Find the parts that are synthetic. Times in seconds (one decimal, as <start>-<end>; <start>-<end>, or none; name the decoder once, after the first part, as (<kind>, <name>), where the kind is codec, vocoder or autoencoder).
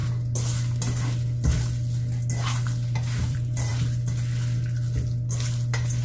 3.2-3.7 (vocoder, BigVGAN v2)